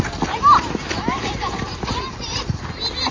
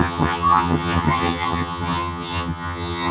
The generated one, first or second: second